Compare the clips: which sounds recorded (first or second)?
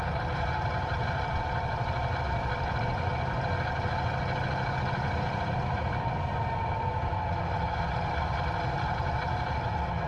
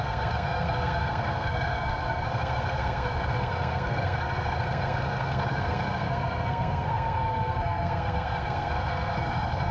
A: first